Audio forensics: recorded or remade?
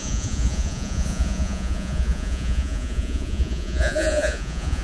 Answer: remade